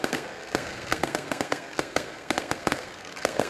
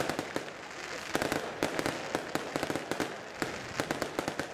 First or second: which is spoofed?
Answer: first